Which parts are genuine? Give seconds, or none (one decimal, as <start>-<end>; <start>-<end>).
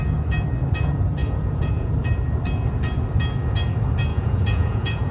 0.0-1.2; 1.9-4.1